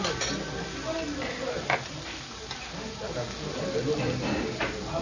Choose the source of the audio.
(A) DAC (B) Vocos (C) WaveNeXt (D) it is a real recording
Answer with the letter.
D